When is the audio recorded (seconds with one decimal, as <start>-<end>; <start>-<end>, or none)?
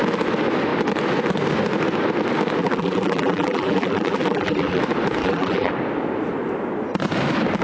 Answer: 0.0-2.6; 4.8-5.2; 5.7-7.6